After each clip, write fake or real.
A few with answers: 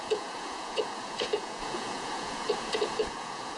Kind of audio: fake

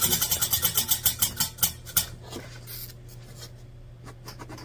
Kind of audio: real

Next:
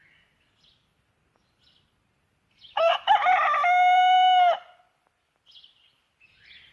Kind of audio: real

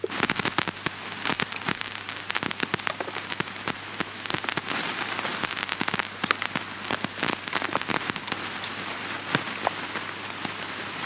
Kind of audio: real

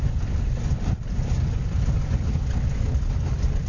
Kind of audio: real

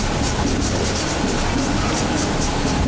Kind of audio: real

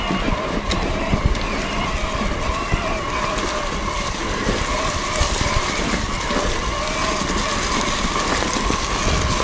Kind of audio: real